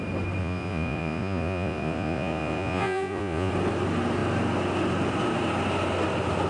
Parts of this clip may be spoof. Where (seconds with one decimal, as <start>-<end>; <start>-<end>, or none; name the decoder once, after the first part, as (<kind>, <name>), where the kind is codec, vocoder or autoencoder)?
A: 0.4-3.5 (vocoder, Vocos)

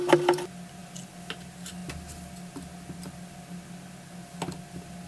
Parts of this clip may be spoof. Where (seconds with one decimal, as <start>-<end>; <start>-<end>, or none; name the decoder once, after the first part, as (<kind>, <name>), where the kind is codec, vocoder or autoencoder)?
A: none

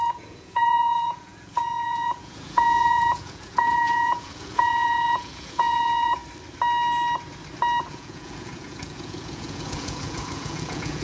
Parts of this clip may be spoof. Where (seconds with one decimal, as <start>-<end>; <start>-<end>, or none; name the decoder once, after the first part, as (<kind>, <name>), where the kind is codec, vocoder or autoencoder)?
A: 0.0-6.2 (vocoder, Vocos); 7.9-11.0

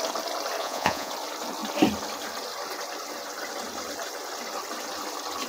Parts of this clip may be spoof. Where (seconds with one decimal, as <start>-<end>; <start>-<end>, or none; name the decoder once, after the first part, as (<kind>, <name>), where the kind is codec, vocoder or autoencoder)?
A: 0.6-1.1 (vocoder, Vocos)

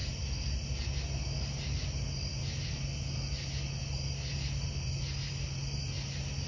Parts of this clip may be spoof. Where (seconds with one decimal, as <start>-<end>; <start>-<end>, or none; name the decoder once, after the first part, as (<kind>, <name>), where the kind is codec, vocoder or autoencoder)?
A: none